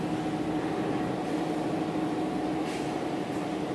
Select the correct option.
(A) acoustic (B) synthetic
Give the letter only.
A